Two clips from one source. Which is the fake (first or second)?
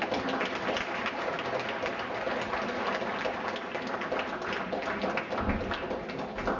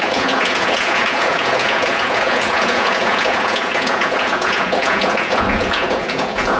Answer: second